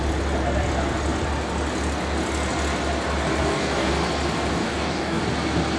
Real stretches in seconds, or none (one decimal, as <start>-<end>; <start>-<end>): 0.0-3.4; 3.9-4.5; 5.2-5.8

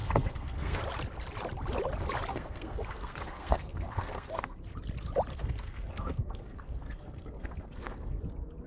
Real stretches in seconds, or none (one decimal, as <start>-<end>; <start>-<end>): 0.8-2.3; 4.6-5.3; 8.2-8.7